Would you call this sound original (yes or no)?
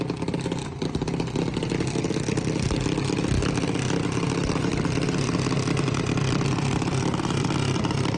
yes